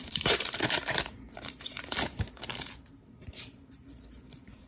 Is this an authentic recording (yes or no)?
no